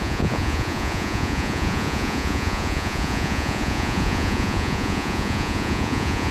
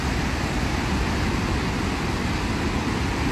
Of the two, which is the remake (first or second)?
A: first